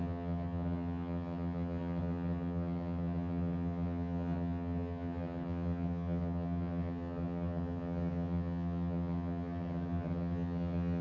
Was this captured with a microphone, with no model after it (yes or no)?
no